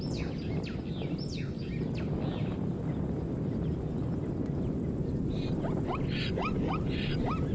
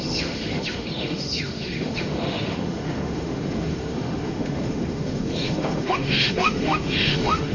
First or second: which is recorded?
first